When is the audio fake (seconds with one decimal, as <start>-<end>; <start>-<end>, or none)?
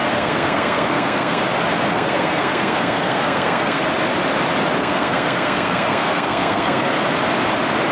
0.0-1.4; 1.9-3.8; 4.8-6.9